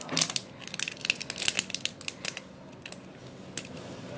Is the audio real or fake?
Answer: real